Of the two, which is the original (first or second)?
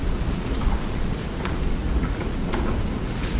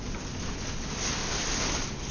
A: second